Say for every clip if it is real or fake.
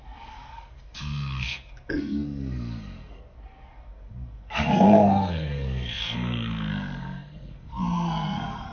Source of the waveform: fake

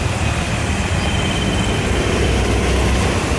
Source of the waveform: real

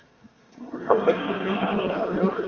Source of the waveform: fake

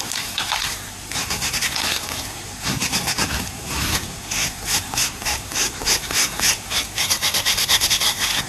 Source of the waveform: fake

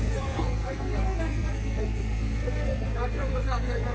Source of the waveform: fake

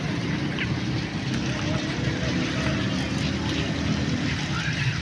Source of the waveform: real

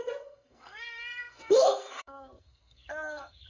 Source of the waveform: fake